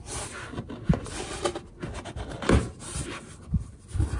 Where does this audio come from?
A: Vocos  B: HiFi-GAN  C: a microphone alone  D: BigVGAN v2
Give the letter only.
C